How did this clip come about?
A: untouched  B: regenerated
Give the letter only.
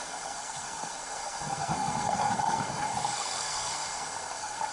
B